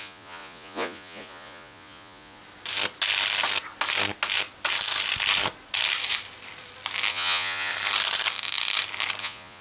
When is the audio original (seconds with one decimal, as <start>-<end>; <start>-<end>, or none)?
2.4-7.1; 7.7-9.2